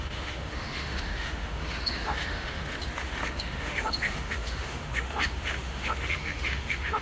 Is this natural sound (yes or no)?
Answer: no